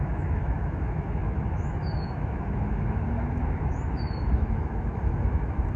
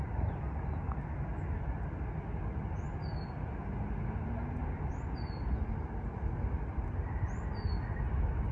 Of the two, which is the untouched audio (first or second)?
second